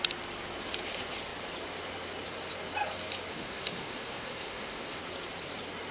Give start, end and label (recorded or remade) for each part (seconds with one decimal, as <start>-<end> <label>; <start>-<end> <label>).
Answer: 0.0-3.3 recorded; 3.3-5.0 remade; 5.0-5.9 recorded